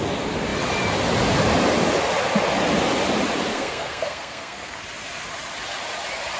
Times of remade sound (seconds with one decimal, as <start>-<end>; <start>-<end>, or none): 3.5-4.8